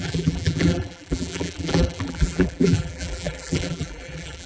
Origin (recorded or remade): remade